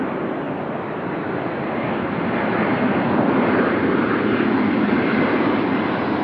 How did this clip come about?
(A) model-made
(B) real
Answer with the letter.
B